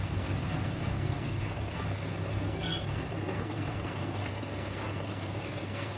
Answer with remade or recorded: remade